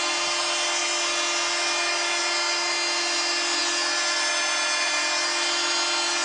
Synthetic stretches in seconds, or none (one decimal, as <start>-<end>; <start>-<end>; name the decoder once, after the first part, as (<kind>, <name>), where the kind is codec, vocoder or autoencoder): none